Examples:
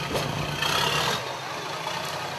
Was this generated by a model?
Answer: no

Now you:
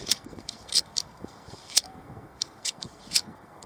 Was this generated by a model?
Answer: yes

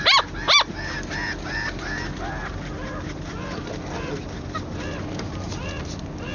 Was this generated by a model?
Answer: no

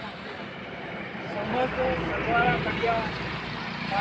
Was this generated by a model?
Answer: yes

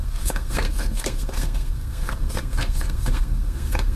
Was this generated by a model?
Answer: yes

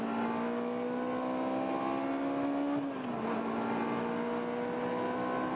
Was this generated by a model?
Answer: no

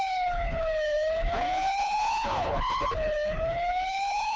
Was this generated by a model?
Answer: yes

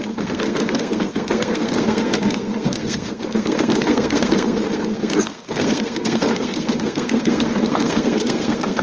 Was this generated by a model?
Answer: yes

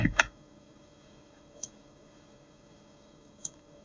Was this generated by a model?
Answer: yes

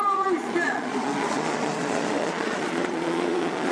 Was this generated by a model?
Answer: yes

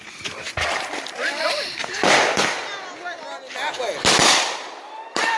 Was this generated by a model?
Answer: no